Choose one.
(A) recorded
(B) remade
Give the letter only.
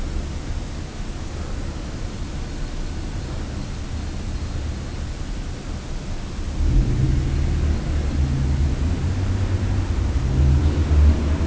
A